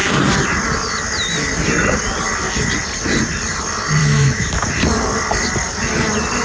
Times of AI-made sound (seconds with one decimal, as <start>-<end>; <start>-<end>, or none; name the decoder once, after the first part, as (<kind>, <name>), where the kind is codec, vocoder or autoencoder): 4.0-4.7 (autoencoder, DAC-VAE)